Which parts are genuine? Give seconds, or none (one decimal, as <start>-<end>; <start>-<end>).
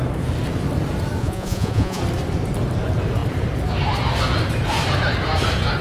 0.0-1.2; 2.0-5.8